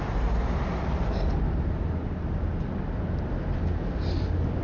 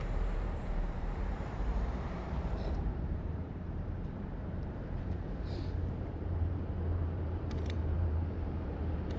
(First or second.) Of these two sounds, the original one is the first